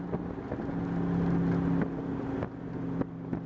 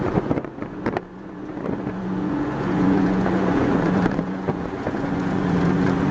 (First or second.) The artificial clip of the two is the second